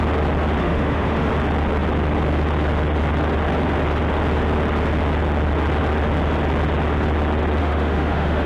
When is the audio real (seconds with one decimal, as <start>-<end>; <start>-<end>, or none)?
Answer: 0.0-0.6; 1.3-7.6